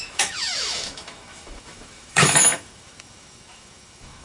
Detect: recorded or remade remade